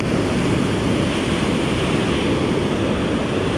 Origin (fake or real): real